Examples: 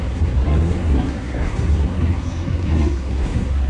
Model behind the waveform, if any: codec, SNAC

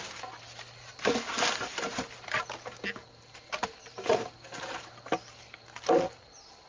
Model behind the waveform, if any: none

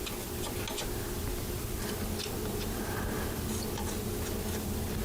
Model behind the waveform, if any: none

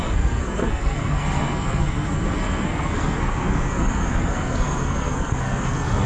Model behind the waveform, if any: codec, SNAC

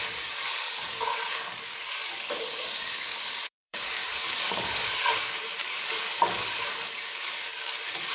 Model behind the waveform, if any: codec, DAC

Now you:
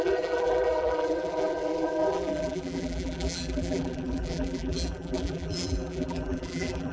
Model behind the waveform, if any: vocoder, BigVGAN v2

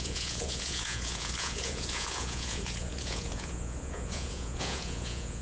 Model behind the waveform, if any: vocoder, Vocos